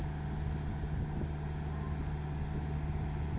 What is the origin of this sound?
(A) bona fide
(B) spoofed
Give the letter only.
A